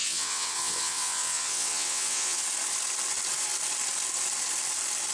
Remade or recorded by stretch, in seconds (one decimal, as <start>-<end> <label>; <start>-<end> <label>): 0.0-2.4 remade; 2.4-5.1 recorded